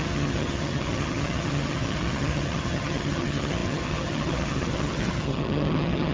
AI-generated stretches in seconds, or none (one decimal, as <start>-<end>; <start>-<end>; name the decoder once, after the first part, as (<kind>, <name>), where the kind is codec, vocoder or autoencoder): 0.0-6.1 (vocoder, HiFi-GAN)